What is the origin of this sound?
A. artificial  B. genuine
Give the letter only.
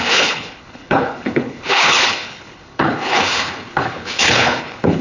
A